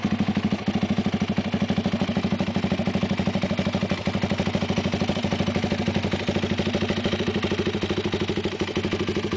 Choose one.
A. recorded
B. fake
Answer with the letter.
A